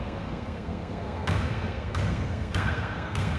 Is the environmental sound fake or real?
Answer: fake